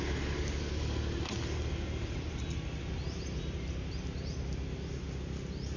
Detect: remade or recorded recorded